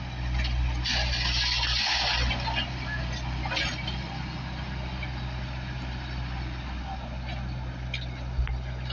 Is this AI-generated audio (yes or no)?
no